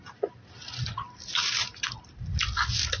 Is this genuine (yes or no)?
yes